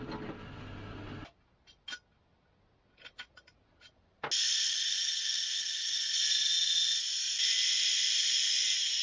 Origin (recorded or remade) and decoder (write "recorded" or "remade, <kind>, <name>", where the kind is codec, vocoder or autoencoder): recorded